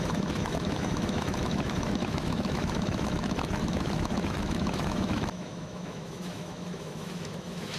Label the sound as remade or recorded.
remade